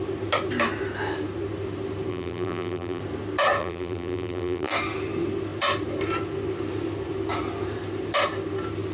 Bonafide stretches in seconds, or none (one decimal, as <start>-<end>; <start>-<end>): 0.0-2.1; 3.0-3.6; 4.7-8.9